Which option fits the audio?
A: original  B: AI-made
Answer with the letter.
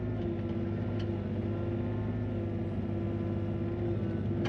A